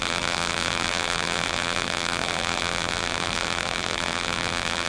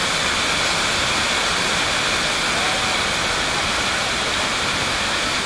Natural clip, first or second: second